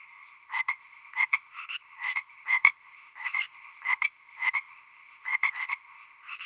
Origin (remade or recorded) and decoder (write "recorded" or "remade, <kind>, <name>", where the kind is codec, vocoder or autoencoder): remade, codec, ZipCodec